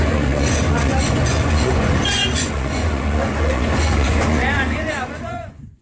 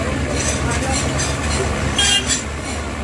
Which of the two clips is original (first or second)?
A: second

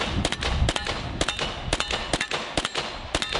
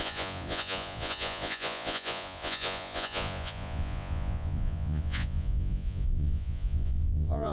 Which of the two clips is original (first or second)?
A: first